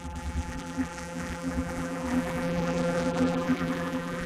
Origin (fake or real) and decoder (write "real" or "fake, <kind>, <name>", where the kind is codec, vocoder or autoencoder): fake, vocoder, BigVGAN v2